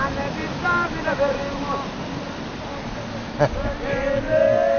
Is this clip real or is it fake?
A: real